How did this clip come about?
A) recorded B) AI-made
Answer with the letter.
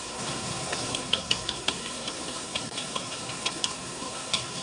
B